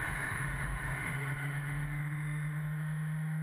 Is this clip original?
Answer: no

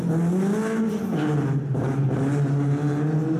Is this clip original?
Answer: yes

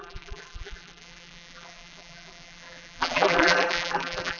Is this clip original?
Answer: no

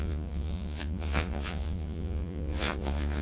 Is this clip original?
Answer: no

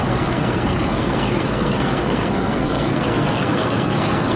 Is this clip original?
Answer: no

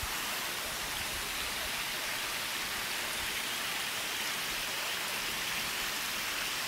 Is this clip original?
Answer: yes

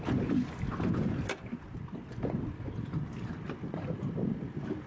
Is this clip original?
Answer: yes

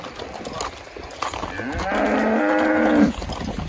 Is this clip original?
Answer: yes